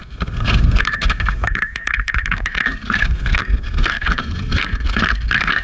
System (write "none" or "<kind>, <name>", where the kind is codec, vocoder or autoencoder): codec, SNAC